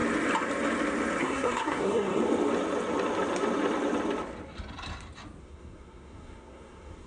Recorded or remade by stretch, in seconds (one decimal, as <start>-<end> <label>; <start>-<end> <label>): 0.0-1.2 recorded; 1.2-2.2 remade; 2.2-5.4 recorded; 5.4-7.1 remade